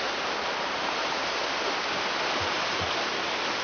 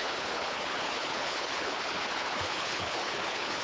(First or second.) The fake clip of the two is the second